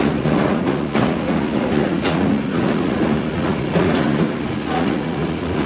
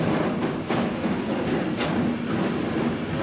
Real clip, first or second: second